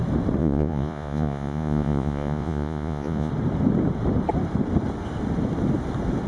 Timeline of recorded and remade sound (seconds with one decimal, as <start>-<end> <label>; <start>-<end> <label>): 0.0-0.4 recorded; 0.4-3.3 remade; 3.3-6.3 recorded

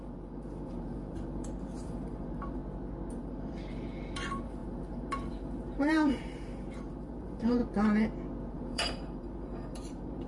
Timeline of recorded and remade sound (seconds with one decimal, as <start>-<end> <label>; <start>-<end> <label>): 0.0-2.6 remade; 2.6-3.1 recorded; 3.1-7.6 remade; 7.6-8.5 recorded; 8.5-10.3 remade

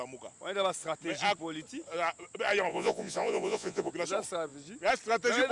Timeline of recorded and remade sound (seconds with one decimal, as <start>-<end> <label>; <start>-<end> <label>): 0.0-2.7 recorded; 2.7-3.9 remade; 3.9-5.5 recorded

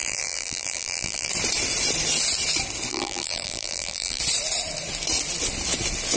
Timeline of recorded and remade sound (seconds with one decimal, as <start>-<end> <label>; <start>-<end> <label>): 0.0-1.3 remade; 1.3-2.9 recorded; 2.9-4.2 remade; 4.2-6.2 recorded

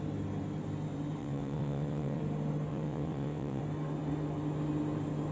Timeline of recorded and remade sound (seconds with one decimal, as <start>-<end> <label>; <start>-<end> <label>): 0.0-1.2 recorded; 1.2-2.2 remade; 2.2-2.7 recorded; 2.7-3.6 remade; 3.6-5.3 recorded

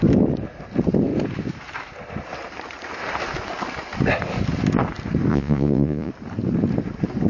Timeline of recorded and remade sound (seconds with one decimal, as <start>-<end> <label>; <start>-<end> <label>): 0.0-5.3 recorded; 5.3-6.1 remade; 6.1-7.3 recorded

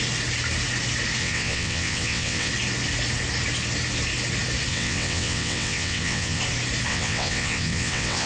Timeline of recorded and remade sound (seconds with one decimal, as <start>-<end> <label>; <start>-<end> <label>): 0.0-1.2 recorded; 1.2-2.5 remade; 2.5-4.7 recorded; 4.7-6.4 remade; 6.4-6.9 recorded; 6.9-8.3 remade

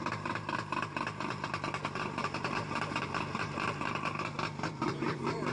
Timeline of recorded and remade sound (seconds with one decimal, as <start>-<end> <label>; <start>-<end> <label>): 0.0-5.5 remade